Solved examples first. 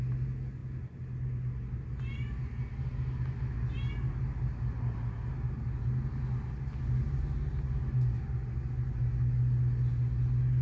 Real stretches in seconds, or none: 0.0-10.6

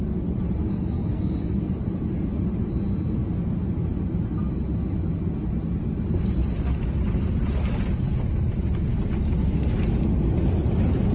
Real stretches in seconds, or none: 0.0-0.7; 1.7-11.1

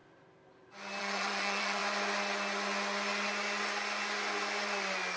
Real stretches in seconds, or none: 0.0-1.0; 1.8-5.2

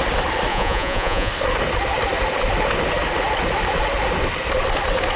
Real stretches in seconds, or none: 0.0-0.5; 1.3-5.2